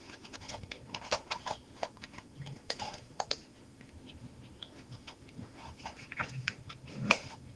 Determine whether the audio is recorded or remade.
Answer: remade